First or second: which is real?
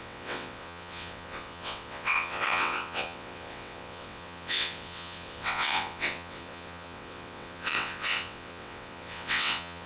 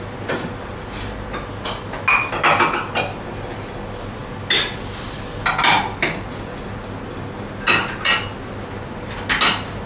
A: second